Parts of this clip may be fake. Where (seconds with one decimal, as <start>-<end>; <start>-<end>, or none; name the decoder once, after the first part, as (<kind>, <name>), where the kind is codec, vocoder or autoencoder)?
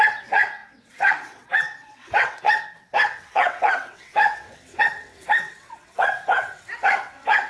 0.0-7.5 (vocoder, WaveNeXt)